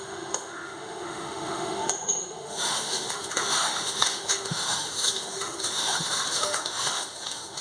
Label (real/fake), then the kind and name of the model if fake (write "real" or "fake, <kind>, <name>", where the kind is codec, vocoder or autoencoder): fake, autoencoder, DAC-VAE